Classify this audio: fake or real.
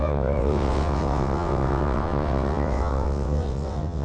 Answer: fake